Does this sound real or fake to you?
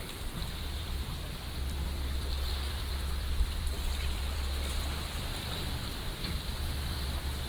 fake